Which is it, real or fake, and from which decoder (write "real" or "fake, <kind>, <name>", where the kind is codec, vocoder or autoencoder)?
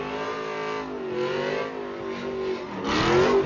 real